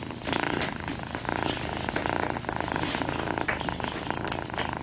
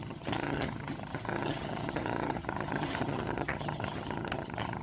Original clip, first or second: first